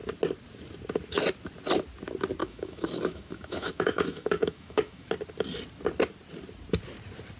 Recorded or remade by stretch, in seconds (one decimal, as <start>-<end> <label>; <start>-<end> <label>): 0.0-2.4 recorded; 2.4-5.1 remade; 5.1-7.4 recorded